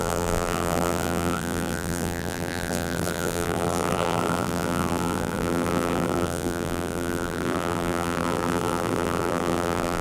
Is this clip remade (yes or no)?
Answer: yes